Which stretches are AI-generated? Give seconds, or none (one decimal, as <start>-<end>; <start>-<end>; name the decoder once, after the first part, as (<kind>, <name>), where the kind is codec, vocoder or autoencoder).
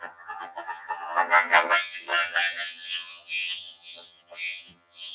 0.0-5.1 (vocoder, HiFi-GAN)